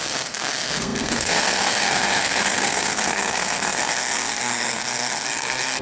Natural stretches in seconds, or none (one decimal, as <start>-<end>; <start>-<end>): none